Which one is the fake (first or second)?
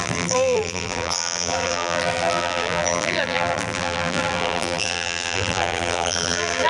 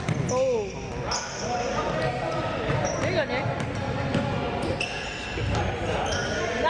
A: first